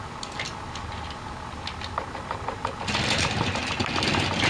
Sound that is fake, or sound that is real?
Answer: real